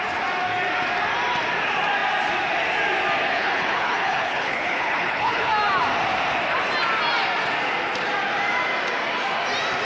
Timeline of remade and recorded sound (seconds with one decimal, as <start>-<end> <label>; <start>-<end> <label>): 0.0-3.3 recorded; 3.3-5.5 remade; 5.5-9.8 recorded